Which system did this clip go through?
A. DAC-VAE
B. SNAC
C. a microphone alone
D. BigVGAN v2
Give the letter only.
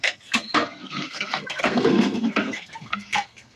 B